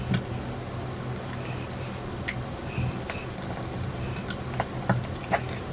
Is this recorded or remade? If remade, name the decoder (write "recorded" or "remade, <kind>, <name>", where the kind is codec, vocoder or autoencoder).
recorded